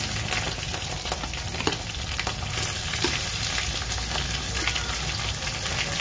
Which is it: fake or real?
real